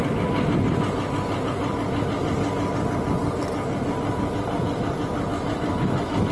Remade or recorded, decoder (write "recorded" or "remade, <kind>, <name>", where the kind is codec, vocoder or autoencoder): recorded